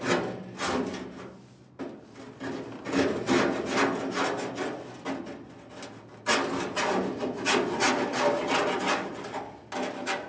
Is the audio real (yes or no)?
yes